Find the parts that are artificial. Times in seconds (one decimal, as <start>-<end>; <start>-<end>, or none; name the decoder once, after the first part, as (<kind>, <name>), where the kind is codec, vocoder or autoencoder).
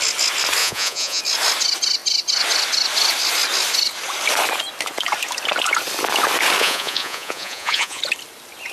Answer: 0.6-1.2 (vocoder, Vocos); 6.6-8.0